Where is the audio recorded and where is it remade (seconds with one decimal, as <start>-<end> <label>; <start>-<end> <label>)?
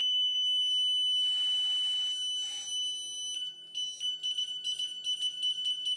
0.0-0.7 remade; 0.7-6.0 recorded